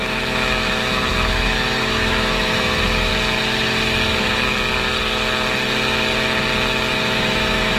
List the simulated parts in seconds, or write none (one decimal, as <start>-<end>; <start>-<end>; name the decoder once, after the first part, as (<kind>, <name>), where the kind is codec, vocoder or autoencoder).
0.0-3.1 (autoencoder, DAC-VAE); 6.9-7.8